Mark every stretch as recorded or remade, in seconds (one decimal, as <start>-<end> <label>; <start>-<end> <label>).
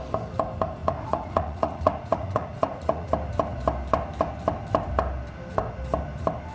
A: 0.0-0.8 recorded; 0.8-3.1 remade; 3.1-6.5 recorded